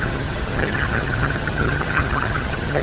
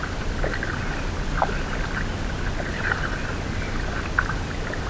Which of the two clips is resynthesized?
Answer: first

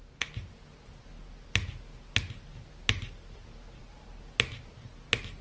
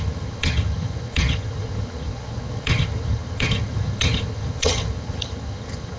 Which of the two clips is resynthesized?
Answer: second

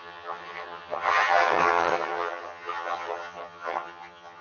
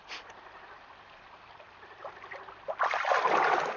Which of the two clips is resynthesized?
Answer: first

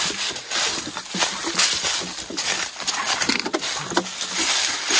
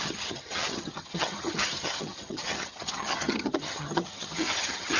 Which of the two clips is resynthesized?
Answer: second